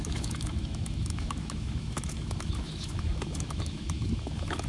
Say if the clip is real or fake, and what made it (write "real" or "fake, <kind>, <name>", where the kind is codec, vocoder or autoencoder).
fake, autoencoder, DAC-VAE